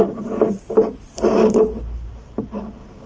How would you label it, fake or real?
real